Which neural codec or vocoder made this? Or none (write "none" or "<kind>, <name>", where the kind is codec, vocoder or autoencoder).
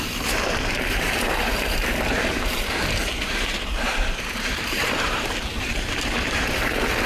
vocoder, BigVGAN v2